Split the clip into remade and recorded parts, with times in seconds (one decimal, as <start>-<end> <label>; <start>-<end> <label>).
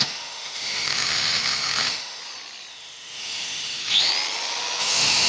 0.0-2.2 remade; 2.2-2.7 recorded; 2.7-4.1 remade; 4.1-4.8 recorded; 4.8-5.3 remade